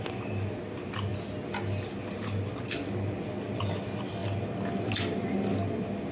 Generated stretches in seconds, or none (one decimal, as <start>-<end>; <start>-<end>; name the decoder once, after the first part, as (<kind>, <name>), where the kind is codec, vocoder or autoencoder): none